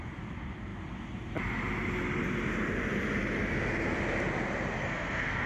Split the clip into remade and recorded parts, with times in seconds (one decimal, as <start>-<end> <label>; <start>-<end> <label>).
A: 0.0-4.8 recorded; 4.8-5.5 remade